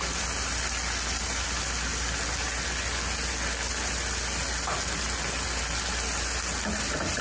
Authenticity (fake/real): real